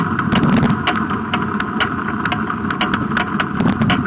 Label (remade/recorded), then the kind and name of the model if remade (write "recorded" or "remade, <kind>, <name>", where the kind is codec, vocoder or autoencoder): recorded